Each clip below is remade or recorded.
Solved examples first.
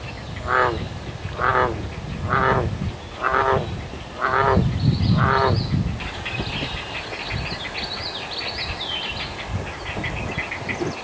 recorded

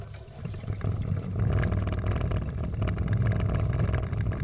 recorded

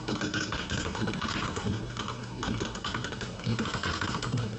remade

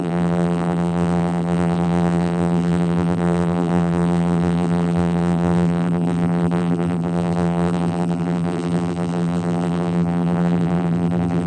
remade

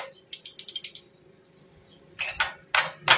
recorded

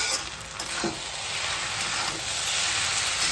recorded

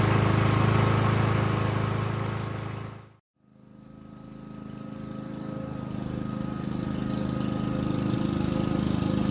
recorded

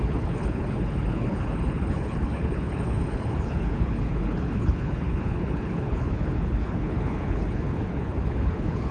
remade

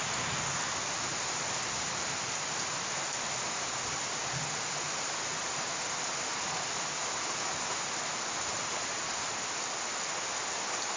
recorded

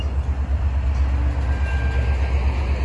recorded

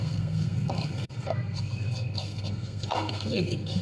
remade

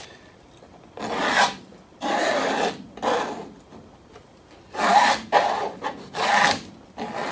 recorded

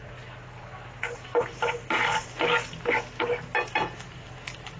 recorded